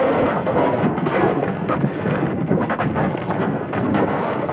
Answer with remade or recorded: remade